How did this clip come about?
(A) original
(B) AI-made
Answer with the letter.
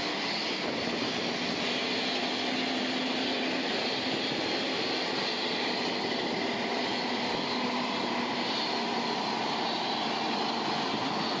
A